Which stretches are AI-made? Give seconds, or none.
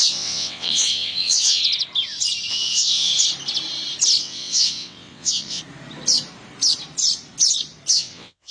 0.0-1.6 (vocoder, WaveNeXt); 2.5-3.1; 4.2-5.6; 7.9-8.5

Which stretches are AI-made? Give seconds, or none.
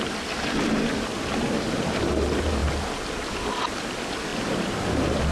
0.0-2.6 (vocoder, BigVGAN v2); 3.3-5.3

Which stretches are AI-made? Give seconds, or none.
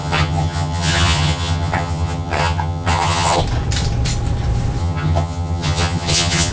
0.0-3.4 (vocoder, HiFi-GAN); 4.8-6.5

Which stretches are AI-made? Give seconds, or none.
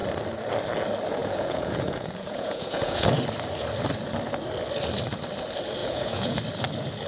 1.2-3.1 (vocoder, Vocos); 5.8-6.4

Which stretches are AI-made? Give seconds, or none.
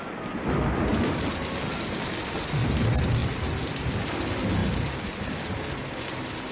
0.9-1.6 (vocoder, BigVGAN v2); 3.2-3.9